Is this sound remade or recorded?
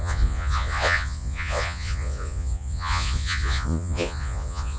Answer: remade